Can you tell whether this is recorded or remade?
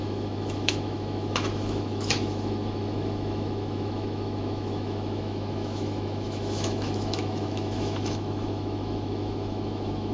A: remade